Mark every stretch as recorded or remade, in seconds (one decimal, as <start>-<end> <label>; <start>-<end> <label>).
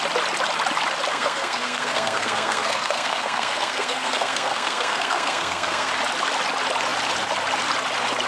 0.0-1.1 recorded; 1.1-5.9 remade; 5.9-8.3 recorded